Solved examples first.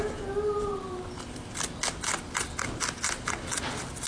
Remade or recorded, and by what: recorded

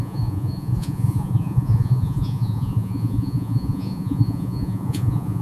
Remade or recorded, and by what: remade, vocoder, Vocos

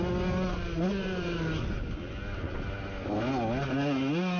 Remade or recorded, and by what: recorded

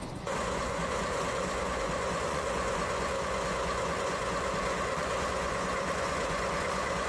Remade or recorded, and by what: remade, vocoder, Vocos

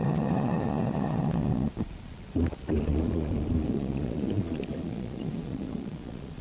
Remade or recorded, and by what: remade, vocoder, Vocos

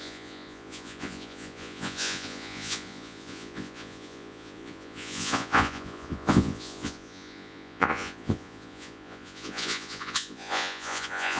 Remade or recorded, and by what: remade, vocoder, Vocos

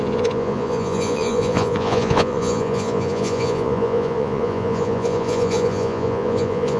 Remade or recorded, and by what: remade, vocoder, Vocos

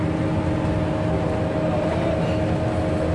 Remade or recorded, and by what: recorded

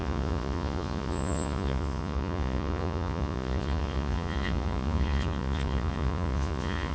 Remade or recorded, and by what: remade, vocoder, Vocos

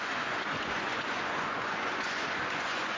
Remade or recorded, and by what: remade, vocoder, Vocos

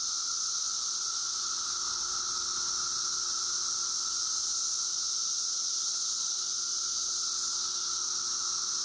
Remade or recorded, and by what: recorded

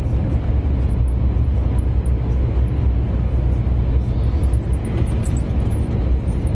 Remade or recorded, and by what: recorded